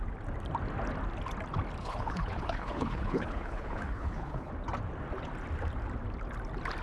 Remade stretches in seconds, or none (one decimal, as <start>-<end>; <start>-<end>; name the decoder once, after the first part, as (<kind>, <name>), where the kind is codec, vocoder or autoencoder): 1.8-4.5 (codec, HILCodec)